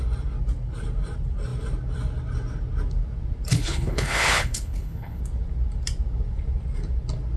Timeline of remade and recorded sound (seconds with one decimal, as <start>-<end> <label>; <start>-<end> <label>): 0.0-3.5 recorded; 3.5-5.2 remade; 5.2-7.4 recorded